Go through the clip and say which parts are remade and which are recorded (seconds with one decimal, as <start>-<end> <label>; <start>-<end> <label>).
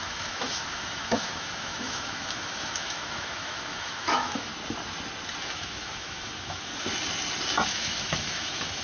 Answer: 0.0-4.5 remade; 4.5-5.4 recorded; 5.4-6.7 remade; 6.7-7.7 recorded; 7.7-8.8 remade